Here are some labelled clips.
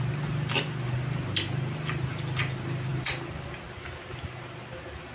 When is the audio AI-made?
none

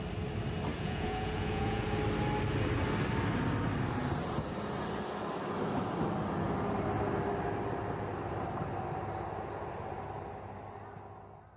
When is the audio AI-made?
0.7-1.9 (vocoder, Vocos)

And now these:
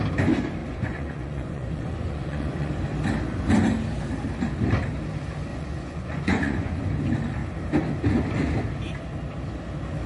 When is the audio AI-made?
0.6-2.7 (vocoder, Vocos); 5.5-6.8